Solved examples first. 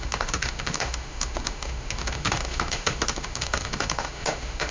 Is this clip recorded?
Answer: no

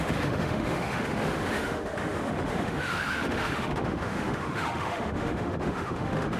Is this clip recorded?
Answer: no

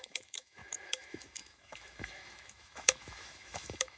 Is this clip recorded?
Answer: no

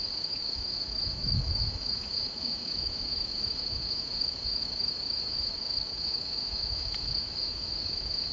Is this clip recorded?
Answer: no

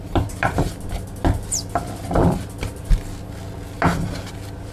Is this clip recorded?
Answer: yes